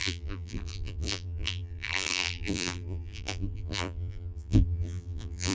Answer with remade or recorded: remade